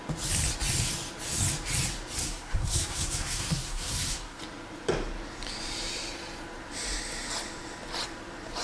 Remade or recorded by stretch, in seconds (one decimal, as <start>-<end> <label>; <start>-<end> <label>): 0.0-2.2 recorded; 2.2-4.4 remade; 4.4-8.6 recorded